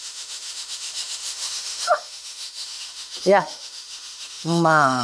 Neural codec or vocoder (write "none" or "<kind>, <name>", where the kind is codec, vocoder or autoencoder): autoencoder, DAC-VAE